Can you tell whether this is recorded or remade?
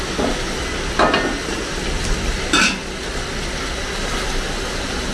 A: recorded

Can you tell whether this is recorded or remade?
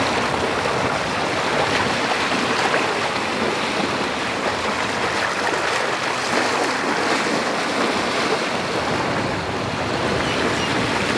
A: recorded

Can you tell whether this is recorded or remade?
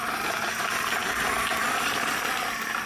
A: recorded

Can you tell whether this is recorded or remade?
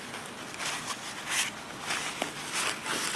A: recorded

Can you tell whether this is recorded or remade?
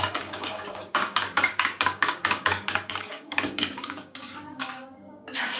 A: remade